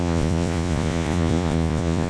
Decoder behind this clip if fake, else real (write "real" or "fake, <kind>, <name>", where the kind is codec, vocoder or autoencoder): fake, vocoder, Vocos